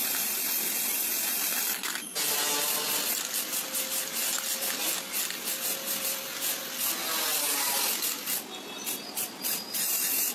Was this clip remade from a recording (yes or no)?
no